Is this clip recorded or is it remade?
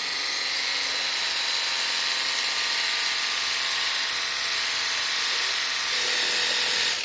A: recorded